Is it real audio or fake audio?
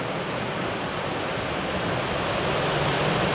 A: real